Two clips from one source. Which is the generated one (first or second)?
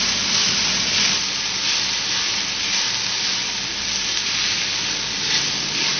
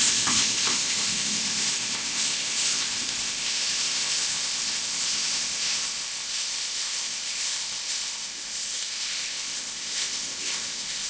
second